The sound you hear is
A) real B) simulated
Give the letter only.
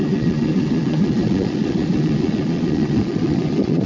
B